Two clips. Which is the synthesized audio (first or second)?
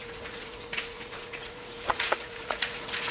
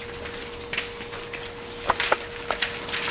first